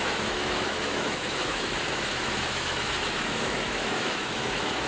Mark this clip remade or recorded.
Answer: remade